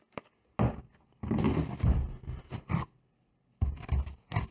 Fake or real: real